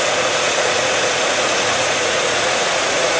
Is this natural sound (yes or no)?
no